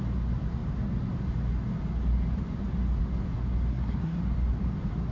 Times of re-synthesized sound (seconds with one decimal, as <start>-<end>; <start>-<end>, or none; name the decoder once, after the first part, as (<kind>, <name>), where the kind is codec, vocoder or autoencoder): 3.7-4.2 (codec, SNAC)